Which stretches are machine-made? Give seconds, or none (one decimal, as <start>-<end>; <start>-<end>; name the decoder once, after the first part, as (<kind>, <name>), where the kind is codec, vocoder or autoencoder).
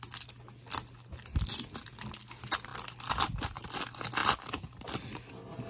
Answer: none